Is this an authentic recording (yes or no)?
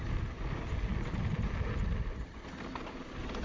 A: yes